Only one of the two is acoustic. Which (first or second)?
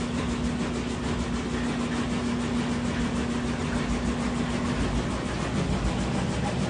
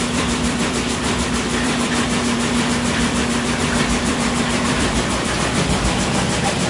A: first